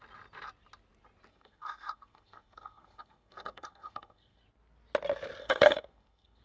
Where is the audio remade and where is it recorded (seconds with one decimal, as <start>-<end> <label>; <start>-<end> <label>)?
0.0-1.3 recorded; 1.3-4.4 remade; 4.4-5.4 recorded; 5.4-6.4 remade